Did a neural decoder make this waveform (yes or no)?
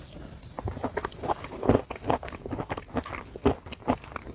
no